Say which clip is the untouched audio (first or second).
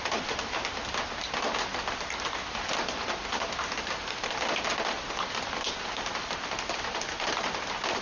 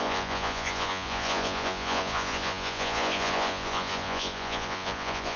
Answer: first